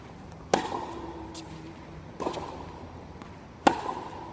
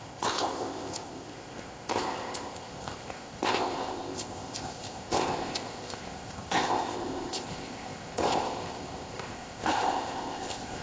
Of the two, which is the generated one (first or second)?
second